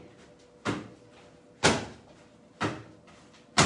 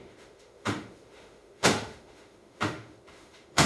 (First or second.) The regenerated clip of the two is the second